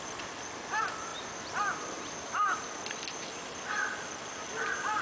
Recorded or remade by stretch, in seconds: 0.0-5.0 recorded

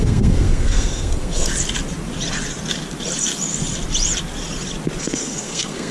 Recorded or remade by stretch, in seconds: 0.0-1.5 remade; 1.5-5.0 recorded; 5.0-5.9 remade

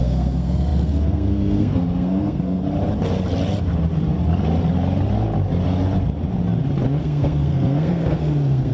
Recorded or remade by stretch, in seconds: 0.0-2.6 remade; 2.6-7.0 recorded; 7.0-8.7 remade

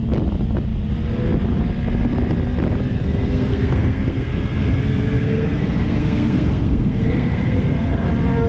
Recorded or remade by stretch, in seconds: 0.0-3.0 recorded; 3.0-8.1 remade; 8.1-8.5 recorded

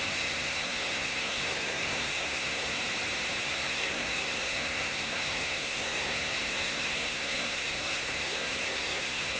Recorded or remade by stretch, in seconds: 0.0-2.8 remade; 2.8-3.4 recorded; 3.4-9.4 remade

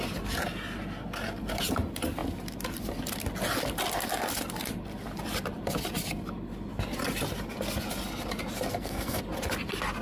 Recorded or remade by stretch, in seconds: 0.0-8.7 recorded; 8.7-9.2 remade; 9.2-10.0 recorded

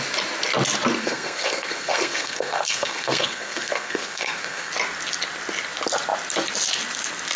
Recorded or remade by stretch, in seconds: 0.0-1.0 recorded; 1.0-4.7 remade; 4.7-7.4 recorded

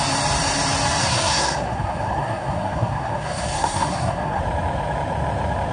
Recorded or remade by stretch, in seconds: 0.0-1.0 recorded; 1.0-4.4 remade; 4.4-5.7 recorded